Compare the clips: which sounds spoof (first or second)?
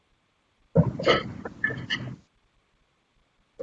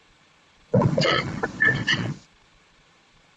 second